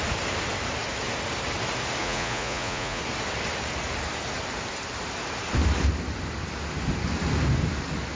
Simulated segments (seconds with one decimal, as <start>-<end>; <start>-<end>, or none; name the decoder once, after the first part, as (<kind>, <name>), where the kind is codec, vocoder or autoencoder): 2.0-3.0 (vocoder, Vocos)

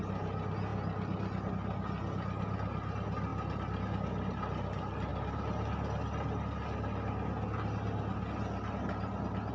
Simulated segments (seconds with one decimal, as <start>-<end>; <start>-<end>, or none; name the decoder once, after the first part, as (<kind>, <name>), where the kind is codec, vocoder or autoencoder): none

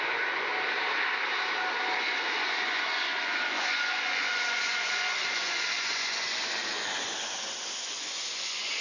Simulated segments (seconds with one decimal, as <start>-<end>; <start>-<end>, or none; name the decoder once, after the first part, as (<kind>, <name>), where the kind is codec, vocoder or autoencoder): 0.0-0.5 (vocoder, Vocos); 2.0-8.8

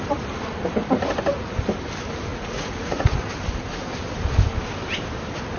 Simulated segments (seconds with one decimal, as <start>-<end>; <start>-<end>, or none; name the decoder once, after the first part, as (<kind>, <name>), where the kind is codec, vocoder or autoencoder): 2.3-3.3 (vocoder, Vocos)

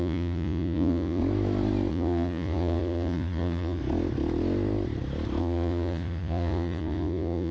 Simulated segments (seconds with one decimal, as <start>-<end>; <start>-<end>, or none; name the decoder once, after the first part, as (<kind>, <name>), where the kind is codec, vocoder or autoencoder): 0.0-1.2 (vocoder, Vocos); 1.9-3.8; 5.4-7.5